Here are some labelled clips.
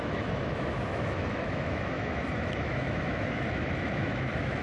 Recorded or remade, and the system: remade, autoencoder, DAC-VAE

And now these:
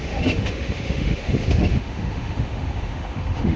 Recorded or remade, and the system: remade, autoencoder, DAC-VAE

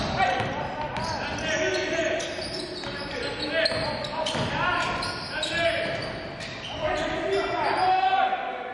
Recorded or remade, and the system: recorded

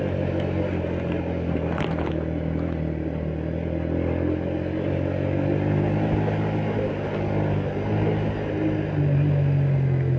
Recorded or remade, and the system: recorded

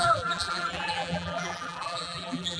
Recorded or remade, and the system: remade, vocoder, BigVGAN v2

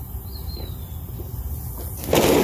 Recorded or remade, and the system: recorded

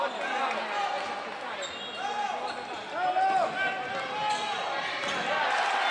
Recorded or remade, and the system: recorded